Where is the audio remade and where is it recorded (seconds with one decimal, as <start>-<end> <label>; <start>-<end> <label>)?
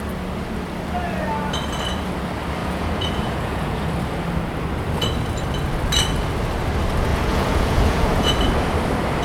0.0-2.6 recorded; 2.6-3.9 remade; 3.9-7.1 recorded; 7.1-8.3 remade; 8.3-9.2 recorded